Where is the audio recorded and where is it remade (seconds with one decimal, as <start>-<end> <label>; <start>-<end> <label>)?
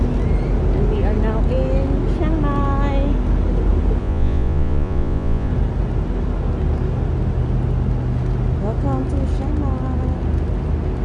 0.0-4.0 recorded; 4.0-5.5 remade; 5.5-11.0 recorded